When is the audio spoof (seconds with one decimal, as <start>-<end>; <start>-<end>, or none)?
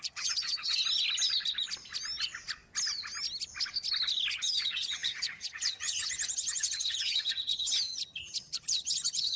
0.0-0.8; 4.3-9.4